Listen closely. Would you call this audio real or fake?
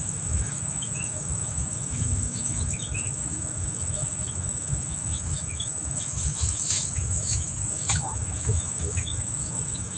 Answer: fake